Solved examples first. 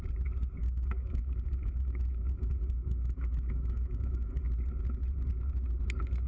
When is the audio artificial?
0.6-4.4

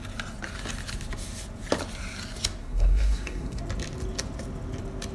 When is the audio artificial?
2.6-3.6

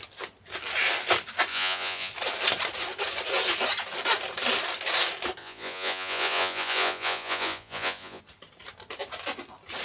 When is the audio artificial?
1.5-2.1; 5.4-8.2